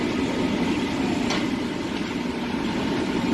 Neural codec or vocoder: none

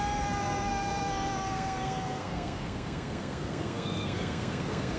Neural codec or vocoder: codec, SNAC